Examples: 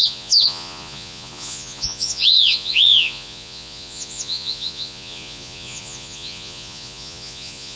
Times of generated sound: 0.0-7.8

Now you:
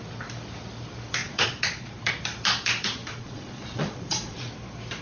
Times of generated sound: 1.2-2.1; 3.0-4.5

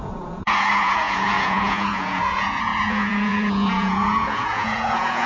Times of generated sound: 0.0-5.3

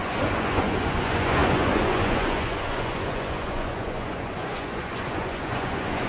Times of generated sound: 0.0-6.1

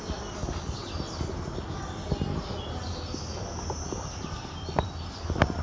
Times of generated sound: none